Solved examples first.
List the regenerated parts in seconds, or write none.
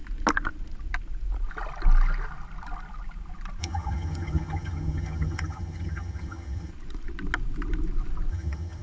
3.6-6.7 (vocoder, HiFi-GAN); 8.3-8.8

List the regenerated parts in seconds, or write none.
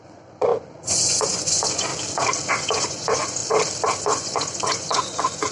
0.0-1.9 (vocoder, Vocos); 2.5-3.4; 4.0-5.5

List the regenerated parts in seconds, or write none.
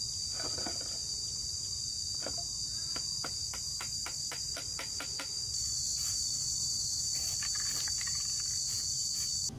1.0-1.9 (vocoder, BigVGAN v2); 3.4-4.9; 5.9-8.0